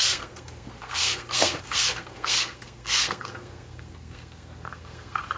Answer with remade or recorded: remade